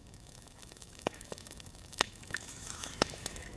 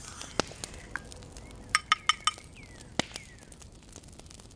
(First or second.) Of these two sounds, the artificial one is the first